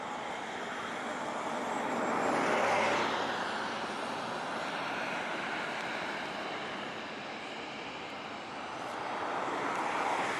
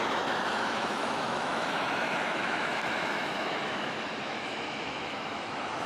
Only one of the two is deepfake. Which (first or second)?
second